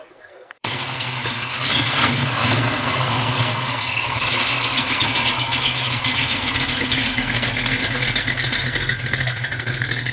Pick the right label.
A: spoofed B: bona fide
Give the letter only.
A